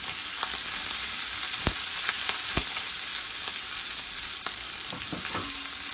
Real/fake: real